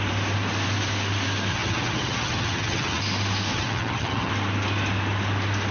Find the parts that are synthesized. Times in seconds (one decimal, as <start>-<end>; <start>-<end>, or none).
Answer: 1.5-3.0; 3.5-4.3